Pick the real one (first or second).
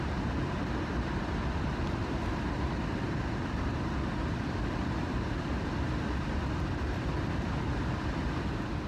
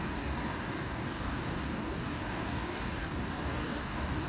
first